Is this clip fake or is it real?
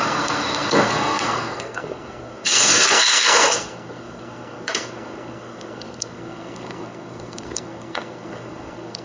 fake